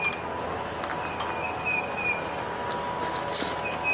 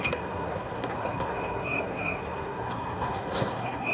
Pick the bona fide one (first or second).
first